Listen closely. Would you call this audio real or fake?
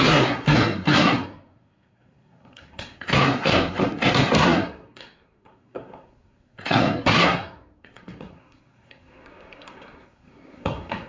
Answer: fake